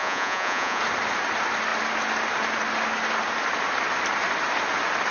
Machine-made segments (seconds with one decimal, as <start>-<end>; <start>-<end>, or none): 0.0-0.8